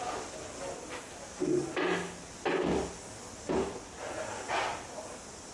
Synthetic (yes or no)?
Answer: no